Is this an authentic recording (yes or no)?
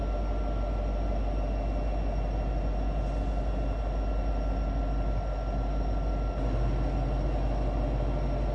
yes